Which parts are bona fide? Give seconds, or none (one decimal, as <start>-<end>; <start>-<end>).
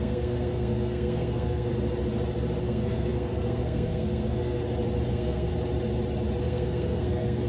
1.7-2.6; 4.6-5.1; 5.5-6.4